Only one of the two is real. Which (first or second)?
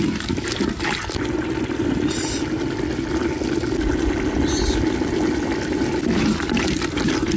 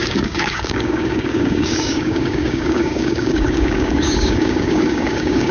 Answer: first